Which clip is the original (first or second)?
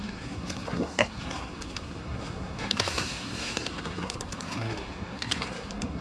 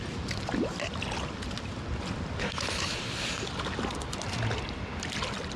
second